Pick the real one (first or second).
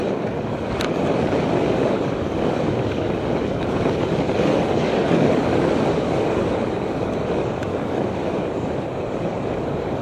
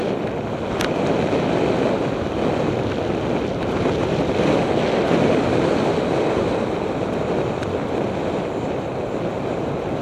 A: second